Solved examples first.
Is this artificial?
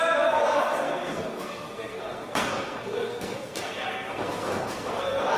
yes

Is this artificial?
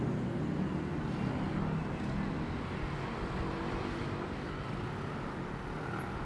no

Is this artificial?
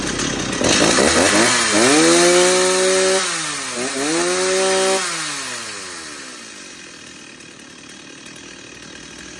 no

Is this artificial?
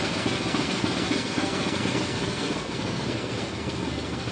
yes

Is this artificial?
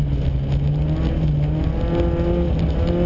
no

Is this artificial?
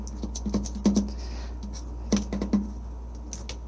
no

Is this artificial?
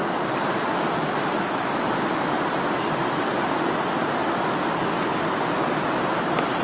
no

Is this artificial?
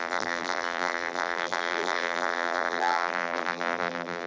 yes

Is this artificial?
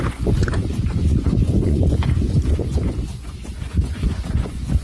yes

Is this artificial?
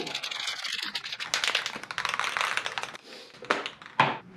no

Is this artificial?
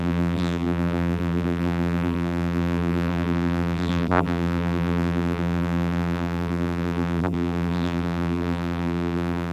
yes